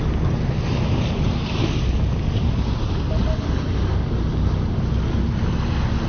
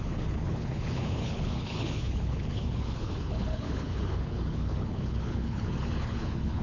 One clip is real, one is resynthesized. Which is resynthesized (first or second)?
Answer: second